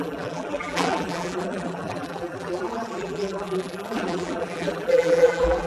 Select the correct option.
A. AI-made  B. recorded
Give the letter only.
A